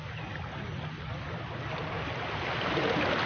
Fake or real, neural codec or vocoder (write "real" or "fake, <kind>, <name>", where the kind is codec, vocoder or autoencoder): real